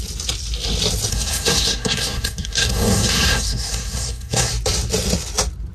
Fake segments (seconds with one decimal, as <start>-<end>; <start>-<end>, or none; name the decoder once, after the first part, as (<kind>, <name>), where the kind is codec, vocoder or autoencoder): 1.1-4.5 (codec, SNAC)